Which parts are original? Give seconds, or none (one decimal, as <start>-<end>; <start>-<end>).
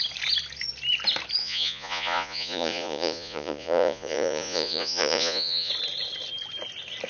0.0-1.4; 5.7-7.1